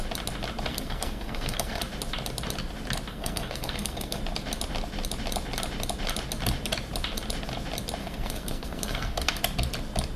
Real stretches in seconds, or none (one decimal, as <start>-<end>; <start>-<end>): 0.0-0.7; 1.8-3.1; 4.2-8.0; 9.4-10.2